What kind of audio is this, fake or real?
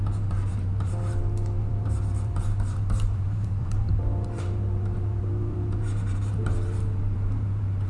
fake